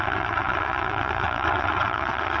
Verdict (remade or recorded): remade